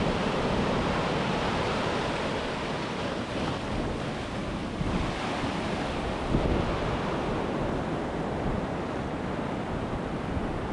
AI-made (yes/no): no